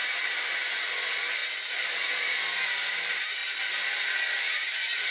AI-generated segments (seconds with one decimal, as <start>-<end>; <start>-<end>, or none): none